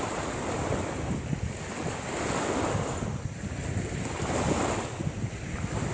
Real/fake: real